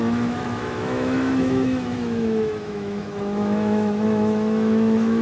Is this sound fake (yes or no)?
yes